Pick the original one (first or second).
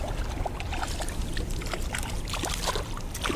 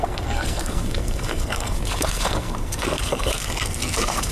first